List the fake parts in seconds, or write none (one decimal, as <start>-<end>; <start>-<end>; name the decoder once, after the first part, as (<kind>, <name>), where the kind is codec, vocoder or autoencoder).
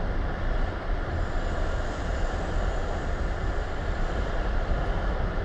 none